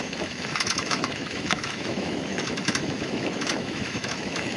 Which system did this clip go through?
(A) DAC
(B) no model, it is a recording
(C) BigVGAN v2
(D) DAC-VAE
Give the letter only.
D